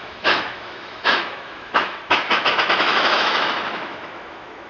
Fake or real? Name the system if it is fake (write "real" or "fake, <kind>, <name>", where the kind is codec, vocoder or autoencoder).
fake, autoencoder, DAC-VAE